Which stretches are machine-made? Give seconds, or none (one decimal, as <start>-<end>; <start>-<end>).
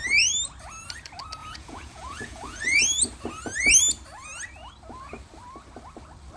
1.4-2.8